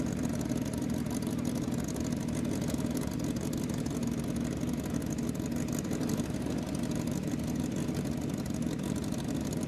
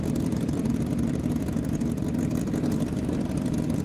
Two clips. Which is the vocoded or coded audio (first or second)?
second